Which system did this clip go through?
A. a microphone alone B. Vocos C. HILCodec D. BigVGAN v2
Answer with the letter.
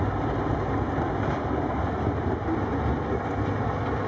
A